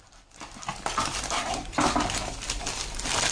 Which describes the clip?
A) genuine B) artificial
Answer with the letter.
A